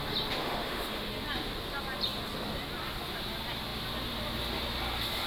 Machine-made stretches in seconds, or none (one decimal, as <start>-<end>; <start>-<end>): 0.4-1.1